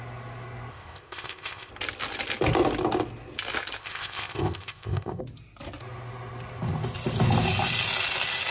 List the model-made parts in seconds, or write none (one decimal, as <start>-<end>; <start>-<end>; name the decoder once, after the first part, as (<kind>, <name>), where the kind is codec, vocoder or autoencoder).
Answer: 0.7-1.7 (codec, ZipCodec); 3.8-5.2